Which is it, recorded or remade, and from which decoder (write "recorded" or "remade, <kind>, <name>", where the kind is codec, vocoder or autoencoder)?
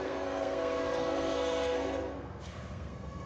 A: remade, codec, SNAC